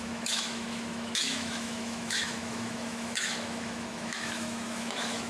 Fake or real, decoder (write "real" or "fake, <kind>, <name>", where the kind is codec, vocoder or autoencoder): fake, autoencoder, DAC-VAE